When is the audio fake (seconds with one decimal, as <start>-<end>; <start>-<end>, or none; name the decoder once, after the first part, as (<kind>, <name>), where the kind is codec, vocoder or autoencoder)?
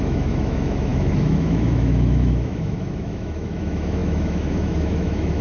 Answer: 0.0-5.4 (autoencoder, DAC-VAE)